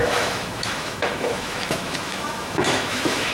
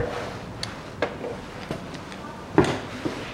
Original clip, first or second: second